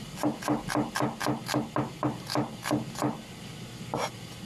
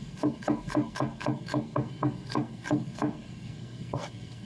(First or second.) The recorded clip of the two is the first